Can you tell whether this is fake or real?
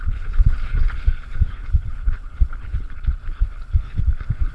fake